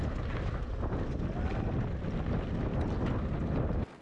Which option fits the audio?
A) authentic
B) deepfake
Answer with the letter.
A